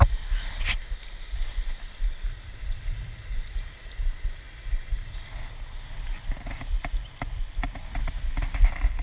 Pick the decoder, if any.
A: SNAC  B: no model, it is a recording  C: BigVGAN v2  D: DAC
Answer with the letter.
B